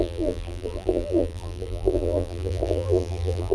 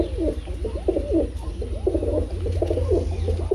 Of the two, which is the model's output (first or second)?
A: first